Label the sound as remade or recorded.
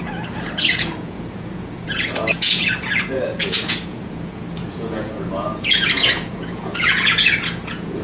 remade